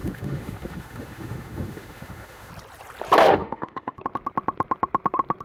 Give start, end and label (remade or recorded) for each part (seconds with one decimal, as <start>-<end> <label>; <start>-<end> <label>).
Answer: 0.0-2.5 remade; 2.5-3.2 recorded; 3.2-4.0 remade; 4.0-5.4 recorded